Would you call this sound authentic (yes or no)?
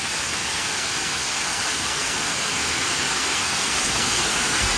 no